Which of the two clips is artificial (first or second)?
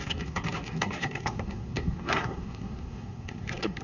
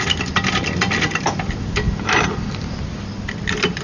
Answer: first